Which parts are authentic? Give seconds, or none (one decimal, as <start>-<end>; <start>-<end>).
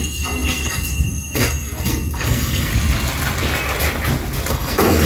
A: 2.7-4.5